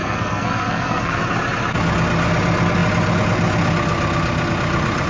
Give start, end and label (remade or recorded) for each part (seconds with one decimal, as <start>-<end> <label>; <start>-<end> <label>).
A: 0.0-1.2 remade; 1.2-5.1 recorded